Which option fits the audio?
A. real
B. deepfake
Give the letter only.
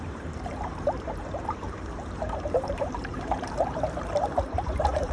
B